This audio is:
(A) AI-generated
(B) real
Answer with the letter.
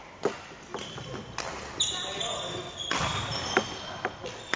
B